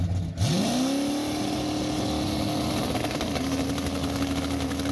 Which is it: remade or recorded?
recorded